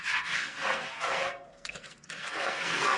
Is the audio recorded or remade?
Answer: remade